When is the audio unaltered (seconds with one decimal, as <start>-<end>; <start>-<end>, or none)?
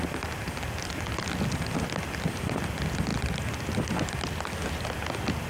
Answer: 0.0-5.5